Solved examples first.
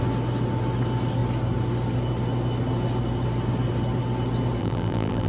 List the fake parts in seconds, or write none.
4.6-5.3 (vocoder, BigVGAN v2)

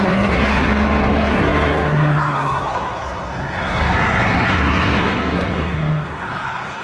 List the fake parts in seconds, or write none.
0.0-6.8 (codec, SNAC)